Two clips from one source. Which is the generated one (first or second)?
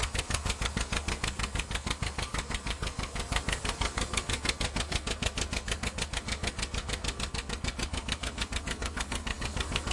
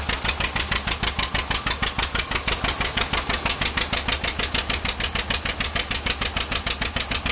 first